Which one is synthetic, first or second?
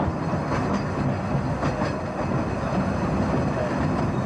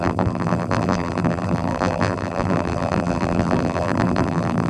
second